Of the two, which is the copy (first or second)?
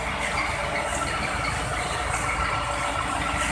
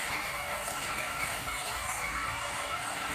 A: second